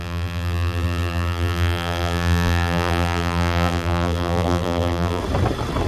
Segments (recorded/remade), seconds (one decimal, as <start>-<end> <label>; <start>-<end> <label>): 0.0-5.2 remade; 5.2-5.9 recorded